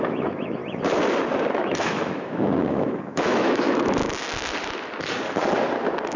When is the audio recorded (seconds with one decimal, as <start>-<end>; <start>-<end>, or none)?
0.6-1.6; 4.0-6.2